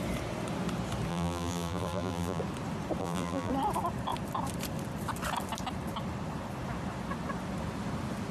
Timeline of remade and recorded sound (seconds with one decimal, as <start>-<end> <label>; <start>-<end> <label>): 0.0-1.1 recorded; 1.1-2.4 remade; 2.4-3.0 recorded; 3.0-3.5 remade; 3.5-8.3 recorded